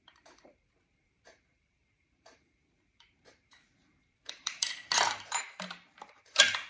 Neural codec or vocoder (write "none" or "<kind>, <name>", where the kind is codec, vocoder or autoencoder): vocoder, BigVGAN v2